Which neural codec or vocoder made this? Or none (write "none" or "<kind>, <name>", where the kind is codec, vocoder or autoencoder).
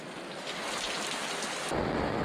none